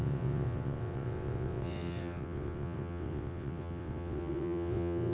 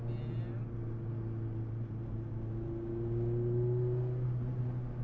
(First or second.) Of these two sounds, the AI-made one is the first